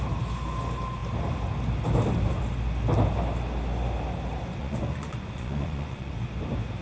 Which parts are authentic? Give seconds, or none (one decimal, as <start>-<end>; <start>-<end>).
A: 0.0-4.6; 6.1-6.8